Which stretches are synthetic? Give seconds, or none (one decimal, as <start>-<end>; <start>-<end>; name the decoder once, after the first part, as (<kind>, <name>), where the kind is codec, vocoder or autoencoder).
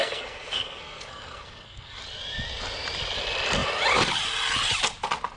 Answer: 0.0-2.0 (codec, SNAC)